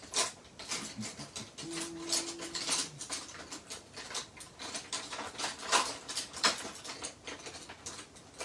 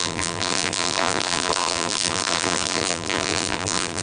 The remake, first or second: second